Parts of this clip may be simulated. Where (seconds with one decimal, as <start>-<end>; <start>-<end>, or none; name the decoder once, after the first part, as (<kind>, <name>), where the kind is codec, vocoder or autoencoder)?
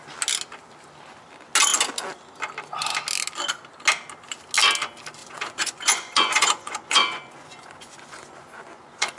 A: 5.2-9.2 (vocoder, Vocos)